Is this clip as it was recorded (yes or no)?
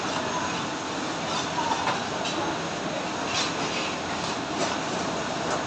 yes